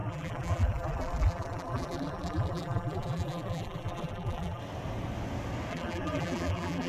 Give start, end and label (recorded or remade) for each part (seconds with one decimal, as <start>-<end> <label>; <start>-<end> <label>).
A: 0.0-4.6 remade; 4.6-5.7 recorded; 5.7-6.9 remade